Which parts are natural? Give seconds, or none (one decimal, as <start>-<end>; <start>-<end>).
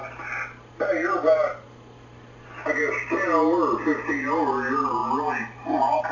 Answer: 0.0-6.1